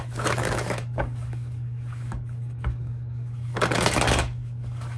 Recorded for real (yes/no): no